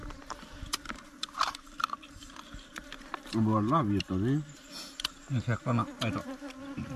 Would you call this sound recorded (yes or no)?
no